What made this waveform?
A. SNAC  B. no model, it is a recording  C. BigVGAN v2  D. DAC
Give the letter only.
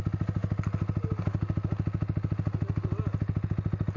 B